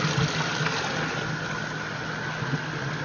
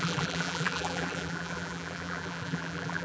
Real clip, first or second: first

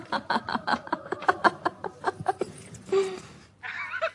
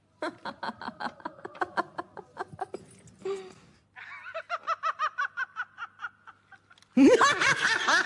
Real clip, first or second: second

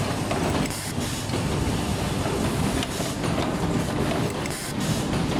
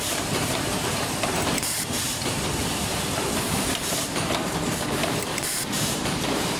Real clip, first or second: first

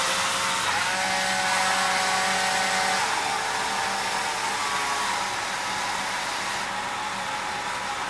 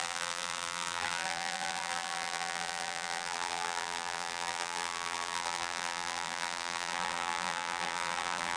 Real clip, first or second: first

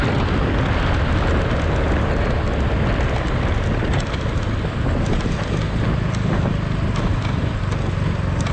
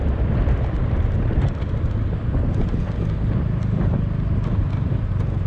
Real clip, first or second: first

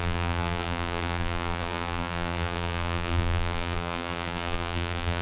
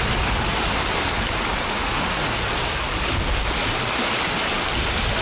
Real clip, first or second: second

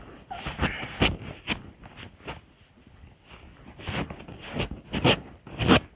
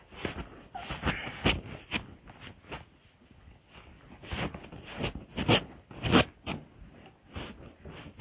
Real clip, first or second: second